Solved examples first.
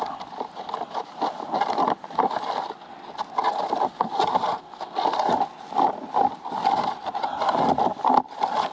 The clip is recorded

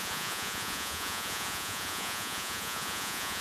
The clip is remade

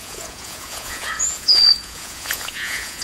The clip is remade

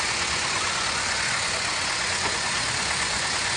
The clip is remade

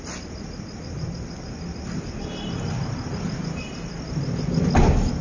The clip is recorded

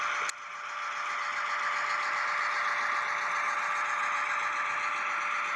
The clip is recorded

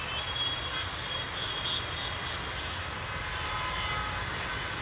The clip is recorded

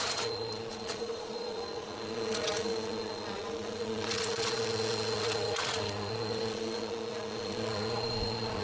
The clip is remade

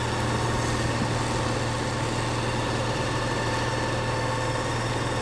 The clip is recorded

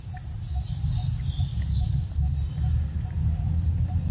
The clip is recorded